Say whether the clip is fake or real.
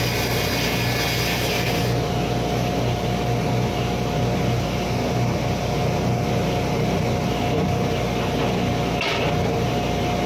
real